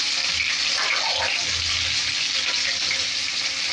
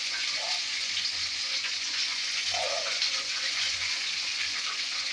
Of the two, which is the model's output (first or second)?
second